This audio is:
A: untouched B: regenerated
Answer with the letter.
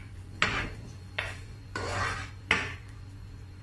B